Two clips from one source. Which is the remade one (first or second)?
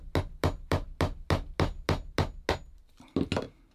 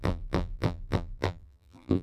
second